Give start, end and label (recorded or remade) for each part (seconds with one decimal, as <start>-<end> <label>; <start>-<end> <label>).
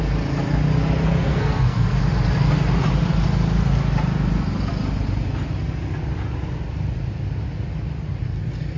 0.0-1.3 recorded; 1.3-2.0 remade; 2.0-8.8 recorded